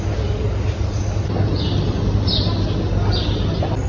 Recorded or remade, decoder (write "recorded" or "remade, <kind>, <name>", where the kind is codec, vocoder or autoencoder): recorded